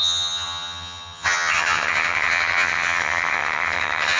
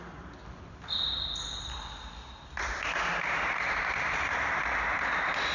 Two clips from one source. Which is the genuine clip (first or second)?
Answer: second